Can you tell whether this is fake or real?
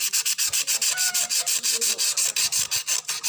real